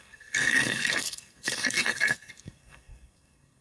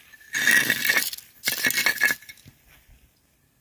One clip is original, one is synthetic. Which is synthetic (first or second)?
first